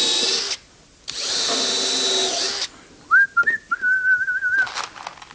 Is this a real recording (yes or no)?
yes